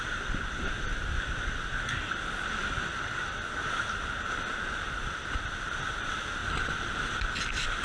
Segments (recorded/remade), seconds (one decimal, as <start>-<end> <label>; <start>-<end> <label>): 0.0-7.8 recorded